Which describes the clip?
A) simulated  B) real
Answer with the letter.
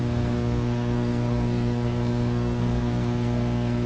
A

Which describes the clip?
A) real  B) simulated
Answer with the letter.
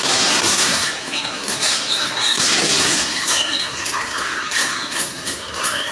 B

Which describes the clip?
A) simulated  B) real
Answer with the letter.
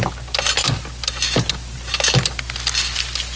B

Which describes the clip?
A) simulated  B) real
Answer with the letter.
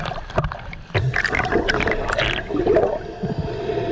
B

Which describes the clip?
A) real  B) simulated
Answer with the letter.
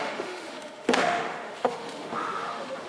B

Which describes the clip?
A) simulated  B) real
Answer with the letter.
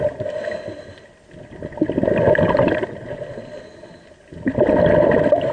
B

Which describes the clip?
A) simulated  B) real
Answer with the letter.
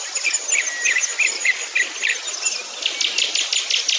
B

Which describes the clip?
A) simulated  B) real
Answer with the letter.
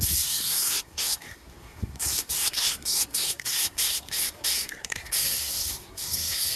A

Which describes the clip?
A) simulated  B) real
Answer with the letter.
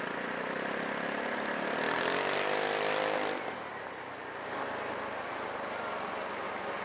B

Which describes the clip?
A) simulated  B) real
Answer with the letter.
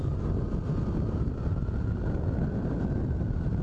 B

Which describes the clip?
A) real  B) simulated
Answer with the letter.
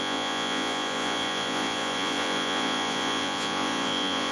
B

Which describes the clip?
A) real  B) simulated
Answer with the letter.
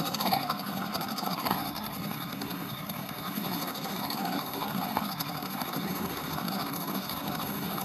B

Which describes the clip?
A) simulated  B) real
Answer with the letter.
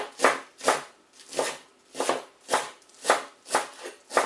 B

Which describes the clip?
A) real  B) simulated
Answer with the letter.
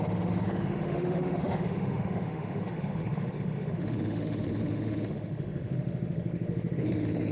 B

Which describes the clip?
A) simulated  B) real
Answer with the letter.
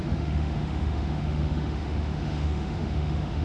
A